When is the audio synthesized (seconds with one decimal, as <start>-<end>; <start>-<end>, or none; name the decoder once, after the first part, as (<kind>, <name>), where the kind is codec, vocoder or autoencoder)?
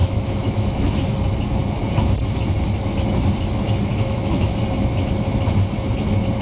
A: 0.0-0.9 (autoencoder, DAC-VAE); 3.9-4.6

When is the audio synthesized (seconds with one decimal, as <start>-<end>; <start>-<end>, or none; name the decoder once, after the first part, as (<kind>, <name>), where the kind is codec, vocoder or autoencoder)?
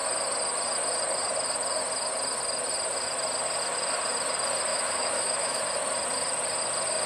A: 4.7-5.6 (autoencoder, DAC-VAE)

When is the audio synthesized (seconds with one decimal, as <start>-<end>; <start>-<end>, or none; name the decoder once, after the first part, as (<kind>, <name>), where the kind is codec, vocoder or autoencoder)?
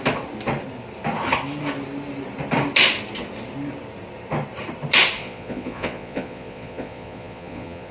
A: 5.2-7.9 (vocoder, Vocos)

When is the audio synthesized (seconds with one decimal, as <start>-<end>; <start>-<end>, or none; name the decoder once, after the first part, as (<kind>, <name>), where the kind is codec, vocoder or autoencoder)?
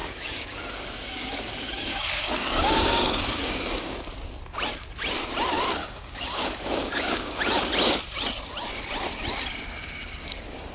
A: 0.0-4.1 (codec, DAC); 5.8-7.4; 9.8-10.7